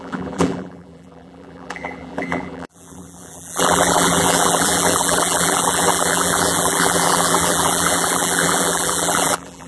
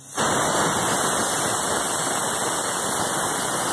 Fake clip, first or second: first